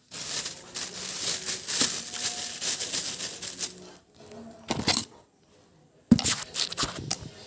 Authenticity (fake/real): real